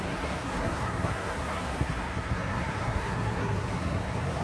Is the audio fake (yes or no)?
yes